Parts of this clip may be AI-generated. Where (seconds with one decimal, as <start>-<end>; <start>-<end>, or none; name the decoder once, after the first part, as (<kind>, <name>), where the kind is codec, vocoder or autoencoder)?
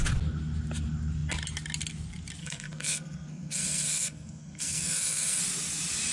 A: 2.4-5.4 (codec, SNAC)